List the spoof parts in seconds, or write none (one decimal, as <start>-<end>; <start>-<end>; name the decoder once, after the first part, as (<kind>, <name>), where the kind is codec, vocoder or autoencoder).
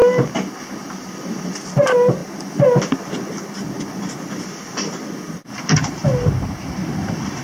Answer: 0.6-2.2 (vocoder, BigVGAN v2); 4.5-6.0; 6.7-7.4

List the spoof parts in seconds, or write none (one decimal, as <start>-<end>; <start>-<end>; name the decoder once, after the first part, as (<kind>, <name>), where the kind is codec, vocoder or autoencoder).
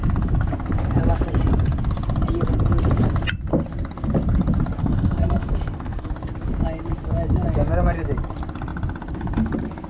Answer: 4.8-6.1 (codec, SNAC)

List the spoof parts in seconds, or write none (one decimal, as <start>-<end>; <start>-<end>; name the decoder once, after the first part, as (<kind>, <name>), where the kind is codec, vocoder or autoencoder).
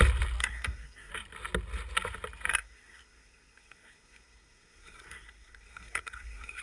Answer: 0.4-1.1 (codec, SNAC); 2.5-6.6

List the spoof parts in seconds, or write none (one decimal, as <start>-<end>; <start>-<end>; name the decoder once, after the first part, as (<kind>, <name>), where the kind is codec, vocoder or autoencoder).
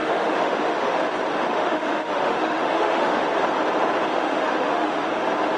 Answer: 0.0-1.0 (autoencoder, DAC-VAE); 1.5-3.2; 4.1-5.1